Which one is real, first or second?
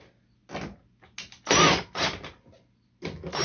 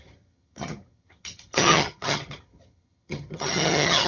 first